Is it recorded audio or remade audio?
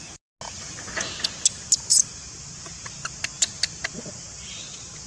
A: recorded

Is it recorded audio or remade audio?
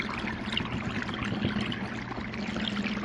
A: recorded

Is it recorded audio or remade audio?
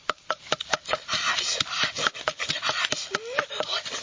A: recorded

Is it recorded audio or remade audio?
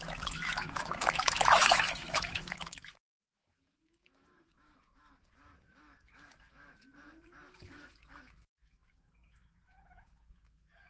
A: remade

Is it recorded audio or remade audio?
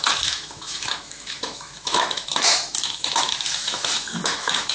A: remade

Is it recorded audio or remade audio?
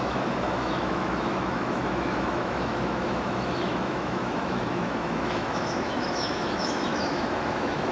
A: remade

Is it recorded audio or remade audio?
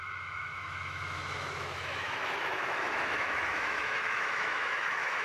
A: remade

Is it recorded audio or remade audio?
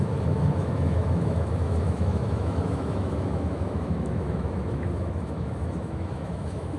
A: remade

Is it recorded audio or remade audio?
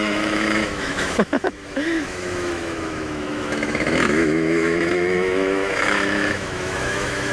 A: remade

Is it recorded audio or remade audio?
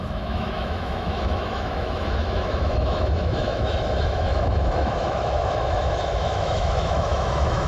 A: remade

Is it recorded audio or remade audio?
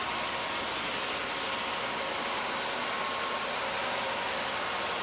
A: recorded